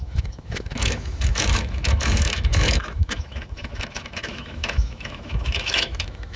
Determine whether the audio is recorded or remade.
remade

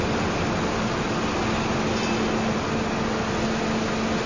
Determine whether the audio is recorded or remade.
recorded